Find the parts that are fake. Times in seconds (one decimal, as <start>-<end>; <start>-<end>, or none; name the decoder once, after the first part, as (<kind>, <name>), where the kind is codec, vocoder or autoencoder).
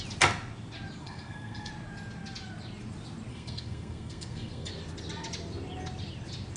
1.0-1.7 (codec, SNAC); 3.3-4.7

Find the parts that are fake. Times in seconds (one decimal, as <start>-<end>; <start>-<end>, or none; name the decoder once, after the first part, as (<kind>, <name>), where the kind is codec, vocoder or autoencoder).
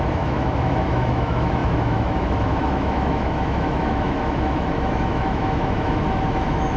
0.0-6.8 (autoencoder, DAC-VAE)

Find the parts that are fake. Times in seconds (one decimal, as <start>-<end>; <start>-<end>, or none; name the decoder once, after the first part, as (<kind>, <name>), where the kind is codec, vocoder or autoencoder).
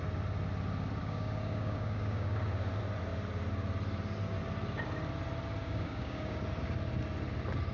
1.0-2.4 (codec, DAC); 5.6-6.4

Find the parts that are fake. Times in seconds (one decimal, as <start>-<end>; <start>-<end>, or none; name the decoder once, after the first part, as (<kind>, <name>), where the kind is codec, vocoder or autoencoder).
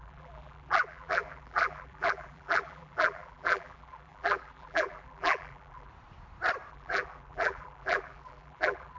0.0-5.9 (vocoder, BigVGAN v2); 6.7-9.0